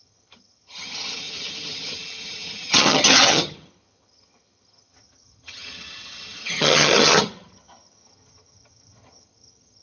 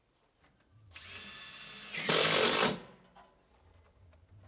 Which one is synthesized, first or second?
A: first